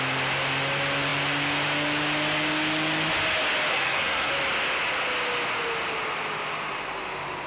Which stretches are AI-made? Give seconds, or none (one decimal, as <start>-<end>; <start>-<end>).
3.7-4.3